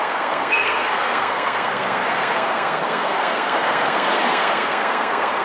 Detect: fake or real fake